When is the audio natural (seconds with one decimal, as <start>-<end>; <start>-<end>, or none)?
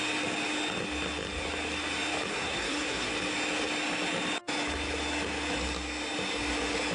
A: 0.0-2.3; 3.1-6.9